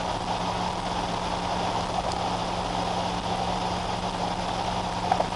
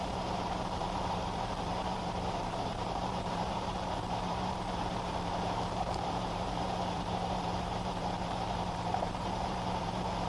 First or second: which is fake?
second